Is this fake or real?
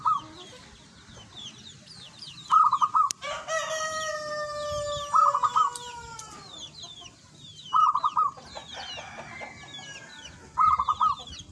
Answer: real